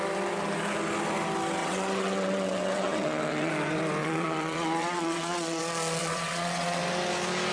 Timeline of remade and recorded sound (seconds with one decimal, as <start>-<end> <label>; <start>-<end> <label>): 0.0-1.6 recorded; 1.6-3.5 remade; 3.5-4.0 recorded; 4.0-5.6 remade; 5.6-6.0 recorded; 6.0-6.8 remade; 6.8-7.5 recorded